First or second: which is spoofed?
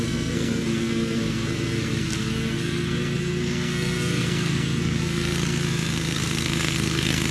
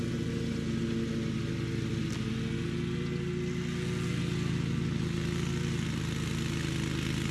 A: first